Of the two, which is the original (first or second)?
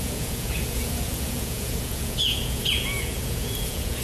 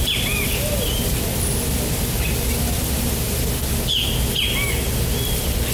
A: second